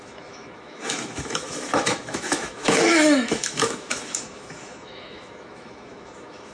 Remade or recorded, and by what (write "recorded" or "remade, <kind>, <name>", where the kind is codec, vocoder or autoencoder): remade, autoencoder, DAC-VAE